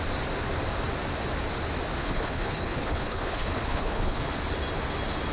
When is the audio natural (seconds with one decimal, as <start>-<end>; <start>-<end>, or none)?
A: 0.0-2.0; 4.2-5.3